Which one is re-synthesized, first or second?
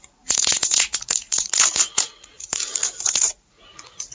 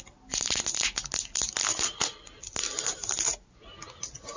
first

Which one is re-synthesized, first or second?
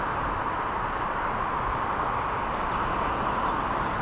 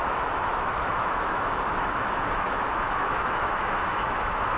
second